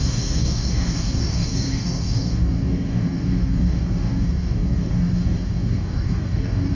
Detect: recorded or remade remade